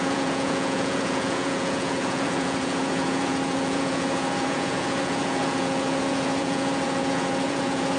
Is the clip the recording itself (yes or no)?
no